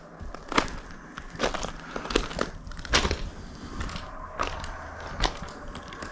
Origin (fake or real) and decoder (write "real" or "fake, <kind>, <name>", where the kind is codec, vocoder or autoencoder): real